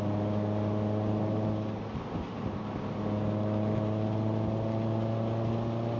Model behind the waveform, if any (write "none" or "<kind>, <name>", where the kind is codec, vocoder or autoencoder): none